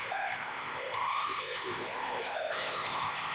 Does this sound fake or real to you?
fake